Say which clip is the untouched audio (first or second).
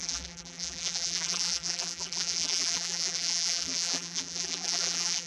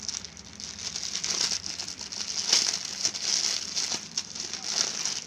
second